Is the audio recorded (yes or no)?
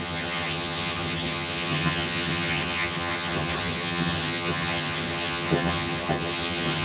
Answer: no